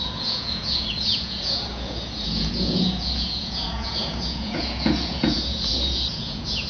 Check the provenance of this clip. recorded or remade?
remade